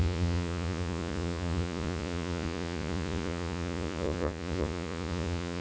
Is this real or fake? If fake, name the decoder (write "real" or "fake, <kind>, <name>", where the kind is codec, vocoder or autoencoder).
fake, vocoder, Vocos